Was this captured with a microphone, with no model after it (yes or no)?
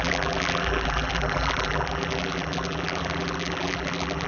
no